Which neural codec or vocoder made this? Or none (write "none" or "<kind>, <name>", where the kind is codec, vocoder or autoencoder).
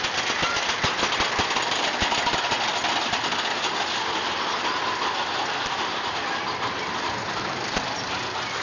none